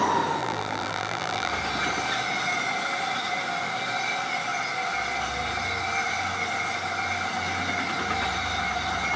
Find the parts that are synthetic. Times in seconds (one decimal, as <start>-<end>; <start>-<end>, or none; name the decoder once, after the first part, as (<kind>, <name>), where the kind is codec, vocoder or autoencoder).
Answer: 0.4-1.5 (vocoder, BigVGAN v2)